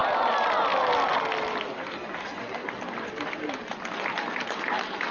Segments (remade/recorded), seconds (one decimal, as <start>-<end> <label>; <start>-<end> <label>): 0.0-5.1 recorded